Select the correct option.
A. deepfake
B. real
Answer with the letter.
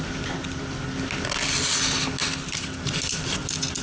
B